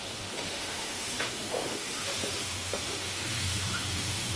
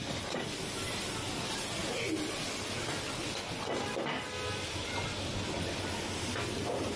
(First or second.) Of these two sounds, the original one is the second